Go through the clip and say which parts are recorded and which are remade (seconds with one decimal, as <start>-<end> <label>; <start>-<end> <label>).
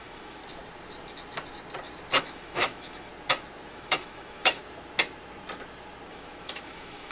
0.0-0.4 remade; 0.4-2.2 recorded; 2.2-3.1 remade; 3.1-3.7 recorded; 3.7-4.6 remade; 4.6-6.1 recorded; 6.1-7.1 remade